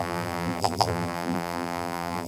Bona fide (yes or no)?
no